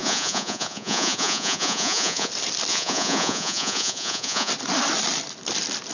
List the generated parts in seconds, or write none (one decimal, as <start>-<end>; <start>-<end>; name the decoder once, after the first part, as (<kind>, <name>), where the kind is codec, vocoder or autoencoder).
0.0-2.3 (vocoder, Vocos); 2.7-4.5